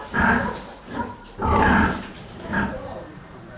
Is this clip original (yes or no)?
no